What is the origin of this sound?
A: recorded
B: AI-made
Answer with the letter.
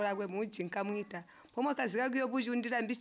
A